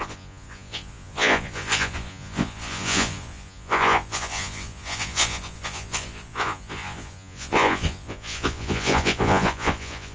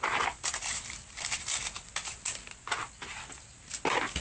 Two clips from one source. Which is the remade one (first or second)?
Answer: first